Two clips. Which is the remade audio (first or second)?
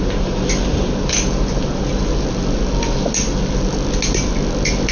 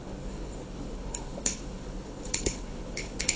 second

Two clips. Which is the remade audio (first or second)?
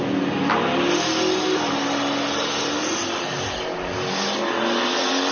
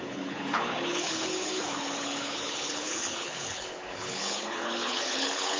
second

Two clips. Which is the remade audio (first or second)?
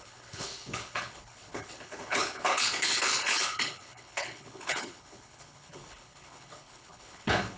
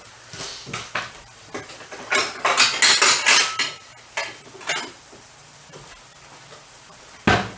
first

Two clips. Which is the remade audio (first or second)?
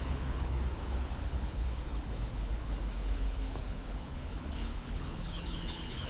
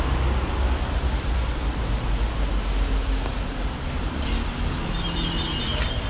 first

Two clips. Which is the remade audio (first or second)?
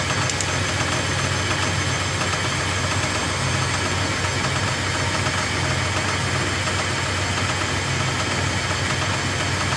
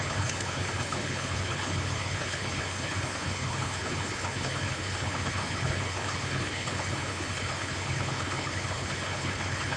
second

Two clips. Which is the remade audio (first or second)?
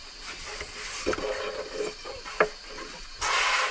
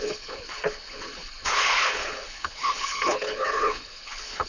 second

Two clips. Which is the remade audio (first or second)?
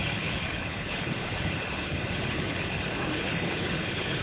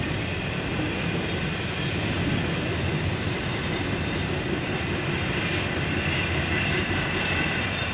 first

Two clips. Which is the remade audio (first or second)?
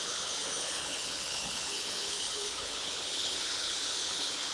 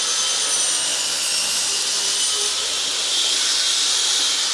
first